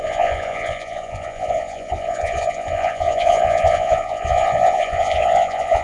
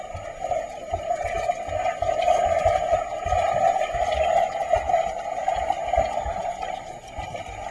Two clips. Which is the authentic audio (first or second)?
second